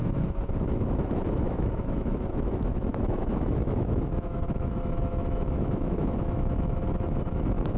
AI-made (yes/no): yes